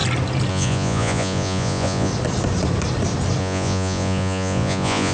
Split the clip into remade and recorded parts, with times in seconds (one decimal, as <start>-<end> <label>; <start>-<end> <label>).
0.0-0.5 recorded; 0.5-2.1 remade; 2.1-3.4 recorded; 3.4-5.1 remade